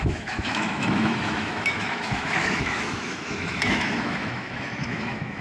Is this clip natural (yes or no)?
no